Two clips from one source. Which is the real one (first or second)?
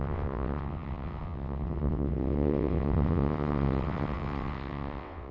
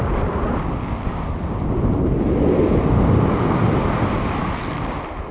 second